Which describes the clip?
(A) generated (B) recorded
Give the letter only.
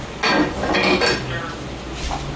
B